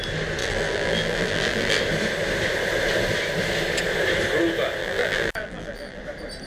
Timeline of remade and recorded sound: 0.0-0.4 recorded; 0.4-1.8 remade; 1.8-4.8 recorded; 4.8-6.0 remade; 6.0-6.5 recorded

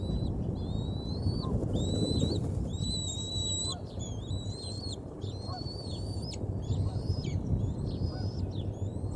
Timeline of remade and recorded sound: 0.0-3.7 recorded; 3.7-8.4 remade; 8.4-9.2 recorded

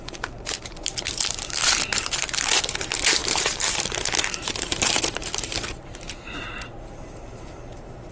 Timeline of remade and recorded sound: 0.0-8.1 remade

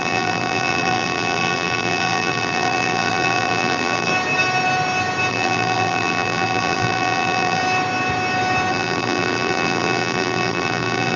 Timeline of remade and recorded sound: 0.0-4.1 remade; 4.1-5.3 recorded; 5.3-7.6 remade; 7.6-8.7 recorded; 8.7-11.2 remade

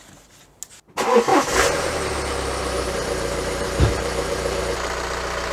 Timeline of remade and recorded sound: 0.0-1.3 recorded; 1.3-4.6 remade; 4.6-5.5 recorded

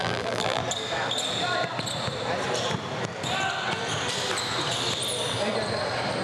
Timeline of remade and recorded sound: 0.0-0.6 remade; 0.6-6.2 recorded

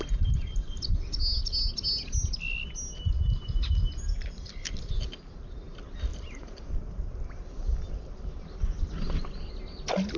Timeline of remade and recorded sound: 0.0-6.1 recorded; 6.1-7.1 remade; 7.1-10.2 recorded